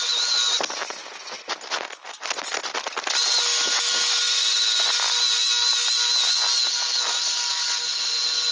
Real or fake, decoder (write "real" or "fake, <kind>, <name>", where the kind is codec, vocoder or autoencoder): real